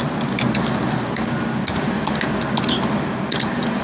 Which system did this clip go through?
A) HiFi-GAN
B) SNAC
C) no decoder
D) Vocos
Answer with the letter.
C